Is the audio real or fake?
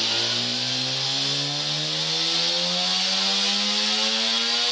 real